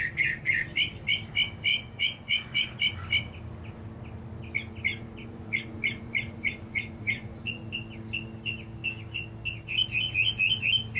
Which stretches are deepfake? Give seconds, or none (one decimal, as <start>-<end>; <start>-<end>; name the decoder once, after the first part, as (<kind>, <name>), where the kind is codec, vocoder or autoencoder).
1.7-2.7 (vocoder, Vocos); 4.9-7.7